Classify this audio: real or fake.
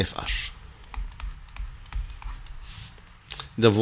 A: real